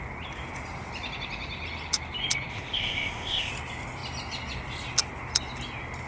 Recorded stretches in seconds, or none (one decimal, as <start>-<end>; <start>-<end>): 0.0-2.5; 3.5-6.1